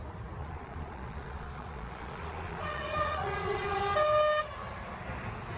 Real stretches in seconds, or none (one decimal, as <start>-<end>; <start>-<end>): 0.0-0.4; 3.8-5.6